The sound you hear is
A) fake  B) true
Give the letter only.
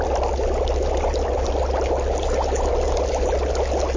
B